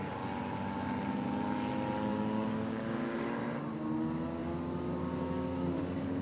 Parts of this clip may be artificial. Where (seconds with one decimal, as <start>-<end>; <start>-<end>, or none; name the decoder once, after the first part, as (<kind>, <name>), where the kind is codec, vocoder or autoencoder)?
2.1-3.4 (codec, DAC); 4.4-5.8

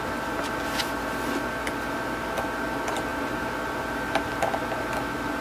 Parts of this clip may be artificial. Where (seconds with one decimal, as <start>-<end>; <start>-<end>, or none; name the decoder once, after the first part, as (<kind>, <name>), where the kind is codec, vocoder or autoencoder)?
none